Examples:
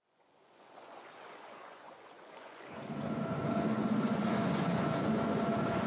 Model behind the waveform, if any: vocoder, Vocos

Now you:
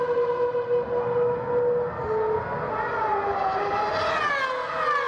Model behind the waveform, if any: none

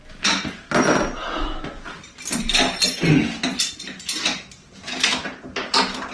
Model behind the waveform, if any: none